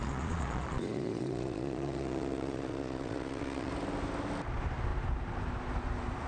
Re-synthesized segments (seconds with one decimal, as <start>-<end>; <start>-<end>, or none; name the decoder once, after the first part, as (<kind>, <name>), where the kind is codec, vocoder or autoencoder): 0.0-3.7 (vocoder, Vocos)

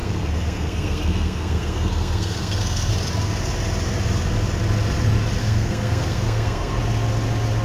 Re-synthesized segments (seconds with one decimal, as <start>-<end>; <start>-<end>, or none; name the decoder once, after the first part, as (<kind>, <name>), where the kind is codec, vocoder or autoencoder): 0.0-2.9 (codec, SNAC); 5.4-6.8